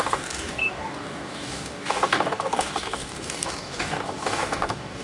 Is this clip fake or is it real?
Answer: fake